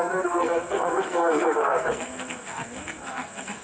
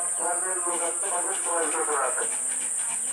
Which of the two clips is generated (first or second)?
first